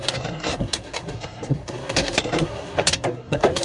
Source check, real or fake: fake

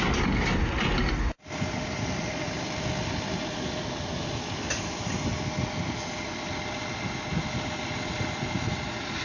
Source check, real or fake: real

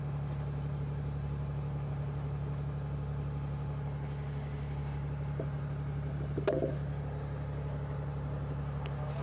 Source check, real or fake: real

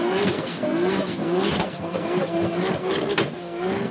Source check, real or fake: fake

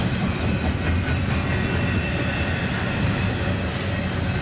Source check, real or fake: real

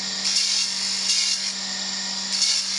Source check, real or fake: real